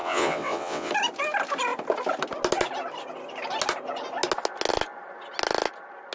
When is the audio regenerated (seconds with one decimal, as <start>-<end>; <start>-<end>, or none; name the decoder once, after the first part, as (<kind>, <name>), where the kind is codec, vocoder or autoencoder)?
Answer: 0.0-0.9 (vocoder, WaveNeXt)

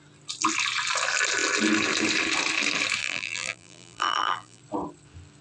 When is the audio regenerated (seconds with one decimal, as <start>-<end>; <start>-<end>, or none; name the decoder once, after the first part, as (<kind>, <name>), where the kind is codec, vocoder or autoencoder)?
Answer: 3.0-4.6 (vocoder, BigVGAN v2)

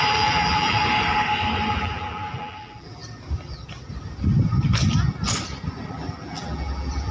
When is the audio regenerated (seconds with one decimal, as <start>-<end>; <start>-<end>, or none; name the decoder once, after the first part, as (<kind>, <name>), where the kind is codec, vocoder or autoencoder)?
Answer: 0.0-0.8 (vocoder, BigVGAN v2); 1.7-3.0; 5.9-7.1

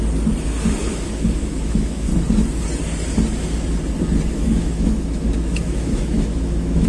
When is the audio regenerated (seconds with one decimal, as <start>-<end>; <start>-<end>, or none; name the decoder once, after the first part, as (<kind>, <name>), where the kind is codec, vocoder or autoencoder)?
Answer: 0.9-2.1 (autoencoder, DAC-VAE); 4.3-6.9